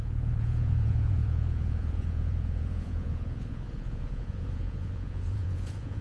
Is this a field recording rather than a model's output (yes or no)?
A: no